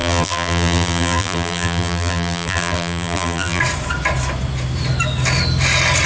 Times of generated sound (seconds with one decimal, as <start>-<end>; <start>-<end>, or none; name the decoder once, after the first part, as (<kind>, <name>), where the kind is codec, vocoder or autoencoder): 0.0-3.6 (vocoder, BigVGAN v2)